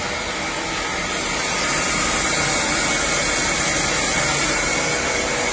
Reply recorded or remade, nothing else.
recorded